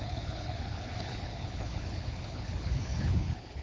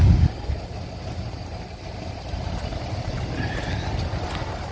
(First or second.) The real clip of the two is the second